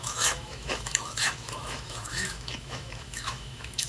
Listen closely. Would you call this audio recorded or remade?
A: remade